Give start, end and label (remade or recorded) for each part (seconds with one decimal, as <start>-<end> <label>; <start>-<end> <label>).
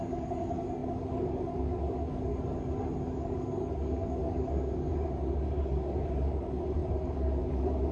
0.0-2.3 remade; 2.3-3.1 recorded; 3.1-7.9 remade